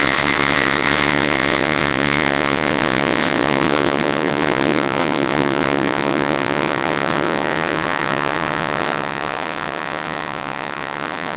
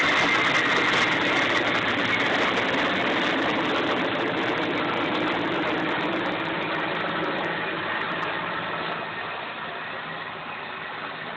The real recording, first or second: second